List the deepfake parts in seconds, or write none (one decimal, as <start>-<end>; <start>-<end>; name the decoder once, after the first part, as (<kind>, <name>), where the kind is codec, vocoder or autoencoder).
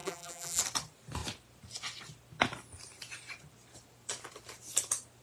0.0-0.6 (vocoder, BigVGAN v2)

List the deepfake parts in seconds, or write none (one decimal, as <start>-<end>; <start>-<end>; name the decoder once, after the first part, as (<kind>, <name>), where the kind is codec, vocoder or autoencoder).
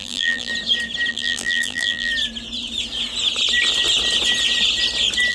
0.0-0.5 (vocoder, BigVGAN v2); 1.1-2.1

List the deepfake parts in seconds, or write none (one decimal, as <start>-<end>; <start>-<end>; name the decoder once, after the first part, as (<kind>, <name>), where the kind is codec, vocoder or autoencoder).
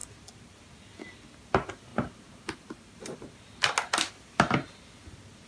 1.9-3.4 (vocoder, BigVGAN v2)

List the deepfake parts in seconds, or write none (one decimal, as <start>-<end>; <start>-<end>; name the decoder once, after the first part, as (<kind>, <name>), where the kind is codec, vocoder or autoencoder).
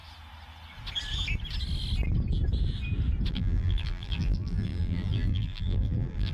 3.3-6.3 (vocoder, BigVGAN v2)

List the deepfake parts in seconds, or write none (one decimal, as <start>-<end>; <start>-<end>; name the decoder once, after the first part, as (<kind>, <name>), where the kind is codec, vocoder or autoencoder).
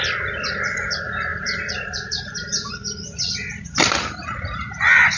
1.3-2.7 (vocoder, BigVGAN v2)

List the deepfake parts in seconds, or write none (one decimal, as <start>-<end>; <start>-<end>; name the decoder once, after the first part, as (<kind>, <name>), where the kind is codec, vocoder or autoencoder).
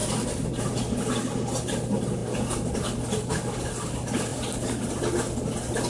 0.0-0.6 (vocoder, BigVGAN v2); 4.3-4.9